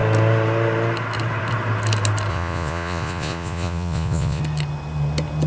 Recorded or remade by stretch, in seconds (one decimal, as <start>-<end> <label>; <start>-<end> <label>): 0.0-2.3 recorded; 2.3-4.4 remade; 4.4-5.5 recorded